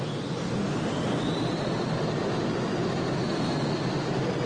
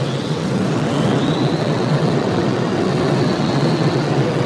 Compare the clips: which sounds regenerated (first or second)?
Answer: second